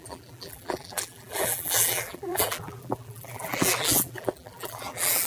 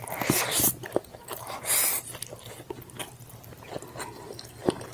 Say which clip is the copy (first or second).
first